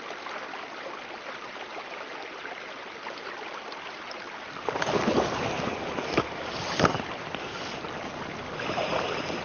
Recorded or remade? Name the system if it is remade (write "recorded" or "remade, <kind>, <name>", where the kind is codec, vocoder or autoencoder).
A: recorded